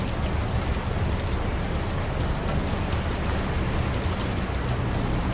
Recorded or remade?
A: recorded